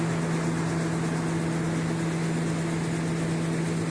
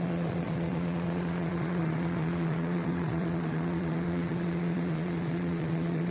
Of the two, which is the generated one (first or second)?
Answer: second